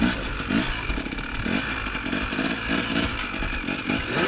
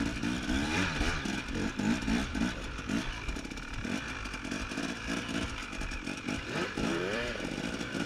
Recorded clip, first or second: first